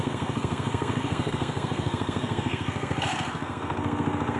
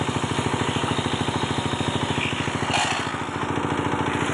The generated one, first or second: first